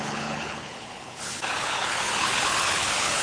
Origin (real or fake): fake